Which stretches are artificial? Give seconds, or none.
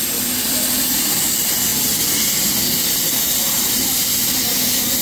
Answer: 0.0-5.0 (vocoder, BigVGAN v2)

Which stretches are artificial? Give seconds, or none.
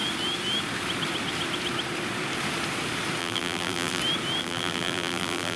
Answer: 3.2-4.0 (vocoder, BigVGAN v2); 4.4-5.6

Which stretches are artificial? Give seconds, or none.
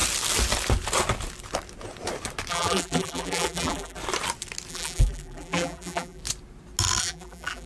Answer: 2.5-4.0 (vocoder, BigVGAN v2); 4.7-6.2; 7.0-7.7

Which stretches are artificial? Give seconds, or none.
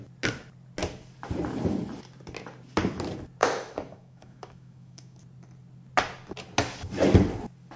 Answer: 3.4-5.2 (autoencoder, DAC-VAE)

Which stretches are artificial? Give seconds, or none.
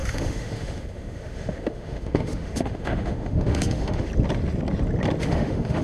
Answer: 0.0-4.1 (autoencoder, DAC-VAE); 5.2-5.8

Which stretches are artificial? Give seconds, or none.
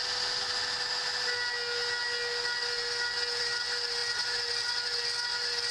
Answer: none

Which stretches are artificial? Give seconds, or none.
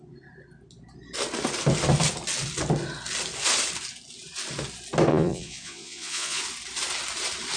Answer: 5.1-6.4 (vocoder, Vocos)